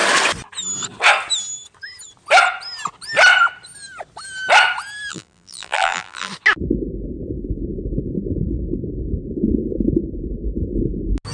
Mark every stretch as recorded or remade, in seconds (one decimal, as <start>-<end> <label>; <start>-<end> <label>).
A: 0.0-5.1 recorded; 5.1-6.3 remade; 6.3-11.3 recorded